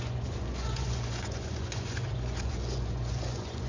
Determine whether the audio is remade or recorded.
remade